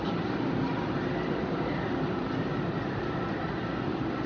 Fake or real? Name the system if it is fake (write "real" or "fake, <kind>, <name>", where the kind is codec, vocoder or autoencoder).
fake, vocoder, BigVGAN v2